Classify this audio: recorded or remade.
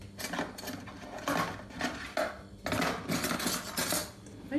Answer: recorded